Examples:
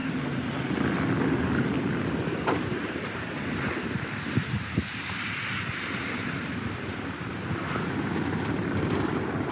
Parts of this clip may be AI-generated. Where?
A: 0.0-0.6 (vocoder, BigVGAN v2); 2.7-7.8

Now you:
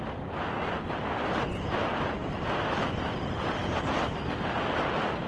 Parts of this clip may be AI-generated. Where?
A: none

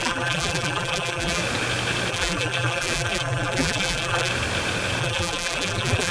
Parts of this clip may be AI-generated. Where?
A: 0.0-1.4 (vocoder, BigVGAN v2); 2.1-4.3; 5.0-6.1

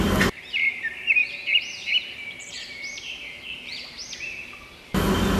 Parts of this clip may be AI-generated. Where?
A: 0.0-1.2 (vocoder, BigVGAN v2); 2.1-4.0

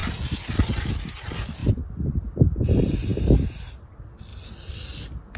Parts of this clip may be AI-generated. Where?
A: 0.8-3.1 (vocoder, BigVGAN v2); 3.7-4.3

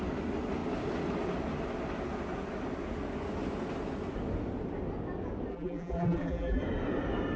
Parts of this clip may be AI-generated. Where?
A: 5.5-6.6 (vocoder, BigVGAN v2)